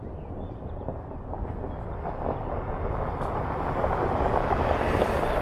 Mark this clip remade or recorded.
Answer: recorded